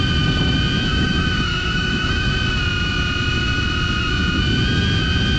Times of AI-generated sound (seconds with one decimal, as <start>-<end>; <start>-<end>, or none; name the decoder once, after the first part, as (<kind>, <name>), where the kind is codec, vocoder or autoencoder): 0.9-2.3 (autoencoder, DAC-VAE)